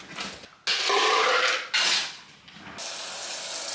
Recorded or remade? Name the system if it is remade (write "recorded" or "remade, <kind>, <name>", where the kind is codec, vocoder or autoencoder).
recorded